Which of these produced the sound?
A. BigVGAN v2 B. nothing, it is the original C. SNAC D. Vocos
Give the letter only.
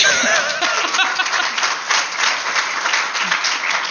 B